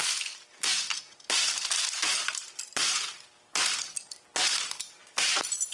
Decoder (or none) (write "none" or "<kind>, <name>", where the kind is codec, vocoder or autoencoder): none